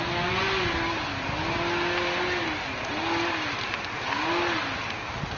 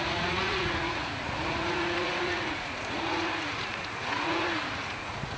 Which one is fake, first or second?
second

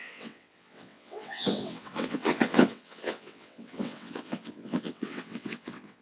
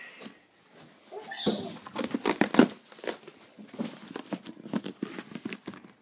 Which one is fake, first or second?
first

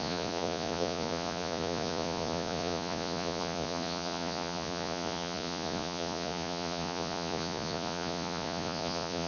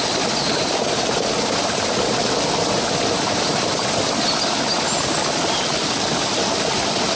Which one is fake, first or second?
first